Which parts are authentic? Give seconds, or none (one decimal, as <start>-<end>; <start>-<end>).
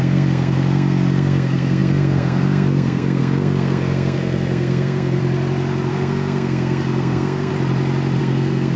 5.2-5.9; 7.5-8.2